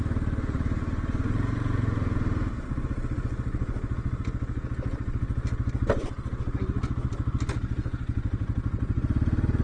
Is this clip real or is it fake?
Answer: real